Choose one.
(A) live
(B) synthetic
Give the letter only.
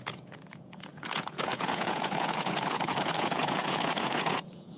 B